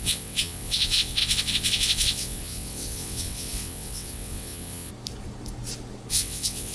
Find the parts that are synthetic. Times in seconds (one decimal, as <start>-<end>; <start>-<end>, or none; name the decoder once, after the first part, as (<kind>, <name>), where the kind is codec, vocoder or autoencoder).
0.0-4.9 (vocoder, WaveNeXt); 6.1-6.7